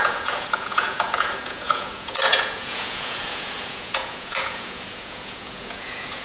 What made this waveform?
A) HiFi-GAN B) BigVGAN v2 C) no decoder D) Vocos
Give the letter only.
D